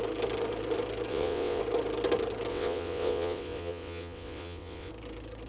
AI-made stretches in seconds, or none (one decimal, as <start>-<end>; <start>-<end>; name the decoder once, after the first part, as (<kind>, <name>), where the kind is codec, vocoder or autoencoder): 1.1-1.6 (vocoder, WaveNeXt); 2.5-4.9